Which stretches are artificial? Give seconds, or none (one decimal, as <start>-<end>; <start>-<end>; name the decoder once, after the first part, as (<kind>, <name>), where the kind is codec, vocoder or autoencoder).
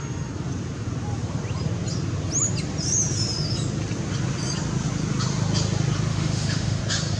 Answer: 6.1-6.8 (autoencoder, DAC-VAE)